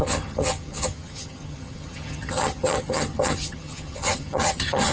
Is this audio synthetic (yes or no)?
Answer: yes